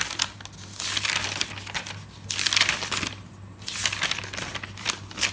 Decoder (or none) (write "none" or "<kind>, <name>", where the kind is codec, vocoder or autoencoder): none